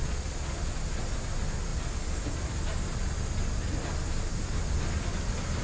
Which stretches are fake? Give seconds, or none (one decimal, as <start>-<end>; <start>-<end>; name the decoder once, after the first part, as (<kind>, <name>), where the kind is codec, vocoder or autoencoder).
0.0-0.7 (vocoder, Vocos)